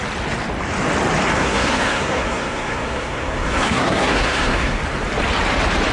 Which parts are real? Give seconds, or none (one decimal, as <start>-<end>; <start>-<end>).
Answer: 0.0-1.3; 4.8-5.9